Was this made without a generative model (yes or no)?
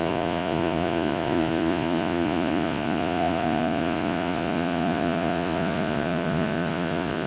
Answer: no